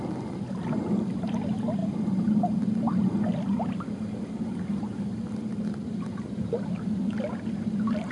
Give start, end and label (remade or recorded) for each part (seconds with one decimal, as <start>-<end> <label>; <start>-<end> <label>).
0.0-8.1 recorded